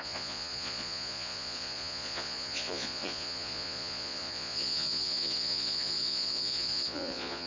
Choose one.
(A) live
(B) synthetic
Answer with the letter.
B